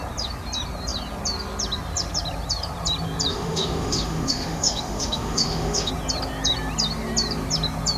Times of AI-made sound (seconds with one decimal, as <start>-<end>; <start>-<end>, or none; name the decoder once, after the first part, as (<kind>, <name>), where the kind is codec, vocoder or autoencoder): 3.3-5.9 (autoencoder, DAC-VAE)